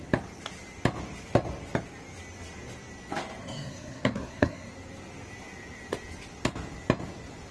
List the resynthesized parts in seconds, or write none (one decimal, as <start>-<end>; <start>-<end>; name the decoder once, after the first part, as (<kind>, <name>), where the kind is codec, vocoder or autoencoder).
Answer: 3.4-4.7 (codec, SNAC)